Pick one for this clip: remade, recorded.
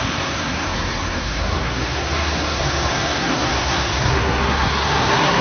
remade